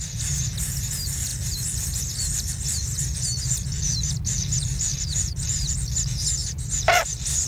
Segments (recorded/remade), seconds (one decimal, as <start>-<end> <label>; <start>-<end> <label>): 0.0-4.9 recorded; 4.9-5.6 remade; 5.6-6.4 recorded; 6.4-7.0 remade; 7.0-7.5 recorded